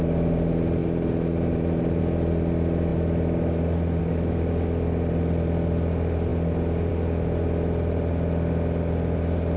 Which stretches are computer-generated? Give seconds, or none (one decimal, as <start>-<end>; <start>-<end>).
0.8-2.0